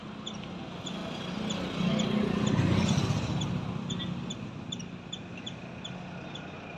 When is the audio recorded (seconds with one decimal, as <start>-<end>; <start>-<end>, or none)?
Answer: 0.0-6.8